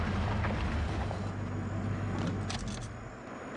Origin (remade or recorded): recorded